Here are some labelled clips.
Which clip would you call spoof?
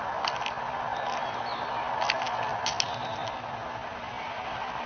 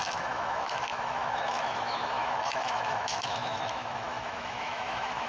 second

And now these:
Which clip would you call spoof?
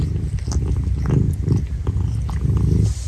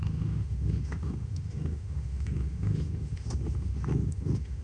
second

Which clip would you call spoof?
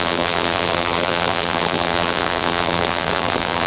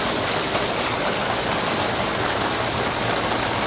first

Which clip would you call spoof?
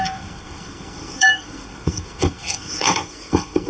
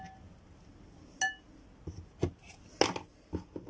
first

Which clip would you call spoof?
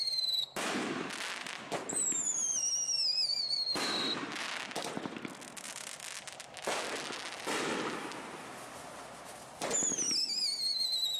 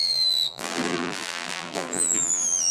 second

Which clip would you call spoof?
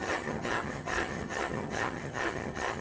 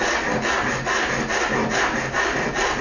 first